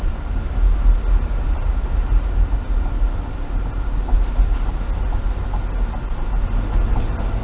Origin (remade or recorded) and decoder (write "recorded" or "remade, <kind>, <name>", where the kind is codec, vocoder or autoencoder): recorded